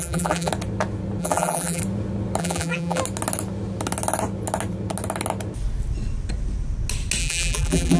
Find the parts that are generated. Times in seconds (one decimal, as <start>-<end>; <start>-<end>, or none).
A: 0.0-0.5; 1.2-1.8; 2.4-3.0; 7.2-8.0